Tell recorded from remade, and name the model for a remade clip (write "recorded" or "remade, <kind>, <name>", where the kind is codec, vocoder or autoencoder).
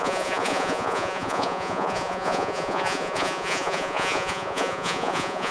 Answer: remade, vocoder, Vocos